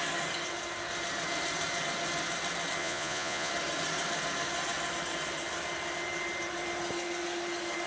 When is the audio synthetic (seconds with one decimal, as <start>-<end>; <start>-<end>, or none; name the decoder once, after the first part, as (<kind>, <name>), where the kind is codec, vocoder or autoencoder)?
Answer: 2.8-3.5 (vocoder, Vocos)